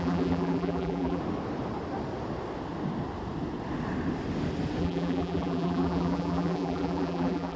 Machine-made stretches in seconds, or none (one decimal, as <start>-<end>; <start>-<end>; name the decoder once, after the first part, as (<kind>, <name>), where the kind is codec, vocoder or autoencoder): 0.0-1.2 (vocoder, BigVGAN v2); 4.8-7.6